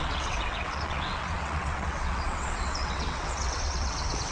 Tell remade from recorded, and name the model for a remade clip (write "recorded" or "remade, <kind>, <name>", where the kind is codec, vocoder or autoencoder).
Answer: remade, vocoder, WaveNeXt